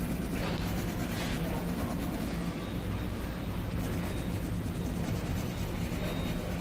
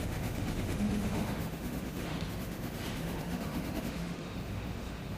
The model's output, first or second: second